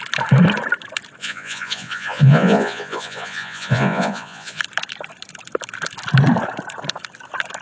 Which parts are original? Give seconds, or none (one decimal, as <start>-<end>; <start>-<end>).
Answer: 0.0-1.2; 4.6-7.6

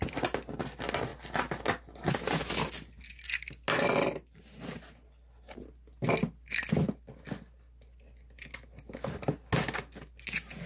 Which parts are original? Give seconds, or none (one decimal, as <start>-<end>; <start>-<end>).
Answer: 0.0-10.7

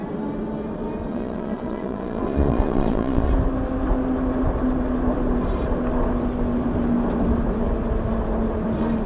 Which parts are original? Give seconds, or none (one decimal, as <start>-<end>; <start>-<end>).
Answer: 0.0-1.1; 3.3-9.1

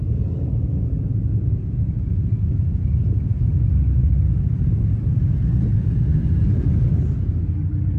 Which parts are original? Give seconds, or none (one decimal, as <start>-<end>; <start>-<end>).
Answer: 3.5-8.0

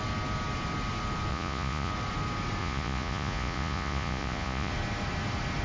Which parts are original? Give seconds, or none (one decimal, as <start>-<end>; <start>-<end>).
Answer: 0.0-1.3; 1.9-2.6; 4.7-5.6